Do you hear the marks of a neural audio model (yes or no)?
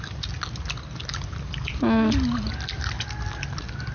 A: no